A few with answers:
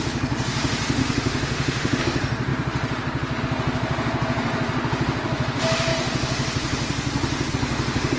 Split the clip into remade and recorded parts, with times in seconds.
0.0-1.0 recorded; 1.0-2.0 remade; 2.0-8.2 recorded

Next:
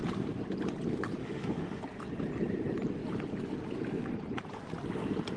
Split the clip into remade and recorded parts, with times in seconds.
0.0-1.2 recorded; 1.2-1.8 remade; 1.8-5.4 recorded

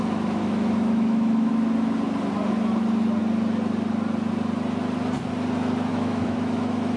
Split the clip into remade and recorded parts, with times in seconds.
0.0-0.4 recorded; 0.4-1.5 remade; 1.5-5.9 recorded; 5.9-7.0 remade